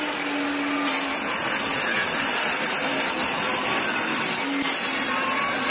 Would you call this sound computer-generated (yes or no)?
no